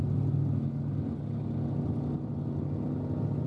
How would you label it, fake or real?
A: real